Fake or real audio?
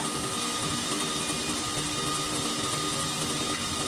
real